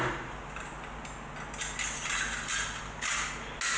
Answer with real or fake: real